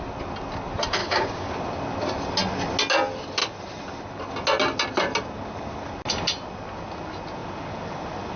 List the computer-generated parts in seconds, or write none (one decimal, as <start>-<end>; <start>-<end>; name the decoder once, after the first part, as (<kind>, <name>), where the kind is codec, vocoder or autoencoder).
1.0-1.5 (codec, DAC)